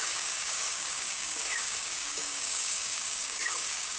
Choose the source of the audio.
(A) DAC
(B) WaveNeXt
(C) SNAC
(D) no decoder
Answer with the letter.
A